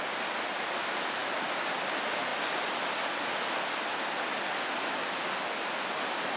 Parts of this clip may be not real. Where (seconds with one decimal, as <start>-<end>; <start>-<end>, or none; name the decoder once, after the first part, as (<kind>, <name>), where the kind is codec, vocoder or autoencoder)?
none